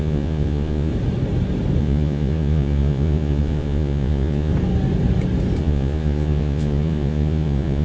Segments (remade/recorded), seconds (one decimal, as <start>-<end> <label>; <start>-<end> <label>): 0.0-0.9 remade; 0.9-1.8 recorded; 1.8-4.5 remade; 4.5-5.6 recorded; 5.6-7.8 remade